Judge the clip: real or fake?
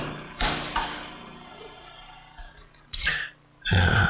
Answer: fake